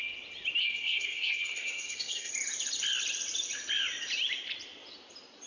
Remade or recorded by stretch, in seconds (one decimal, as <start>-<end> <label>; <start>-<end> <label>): 0.0-0.6 recorded; 0.6-2.3 remade; 2.3-5.5 recorded